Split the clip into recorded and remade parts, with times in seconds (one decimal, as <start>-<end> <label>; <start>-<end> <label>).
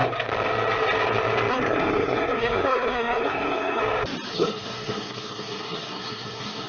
0.0-1.5 recorded; 1.5-3.8 remade; 3.8-4.3 recorded; 4.3-6.7 remade